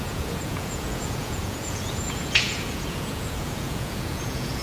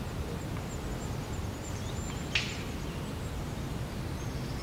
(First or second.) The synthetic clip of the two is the first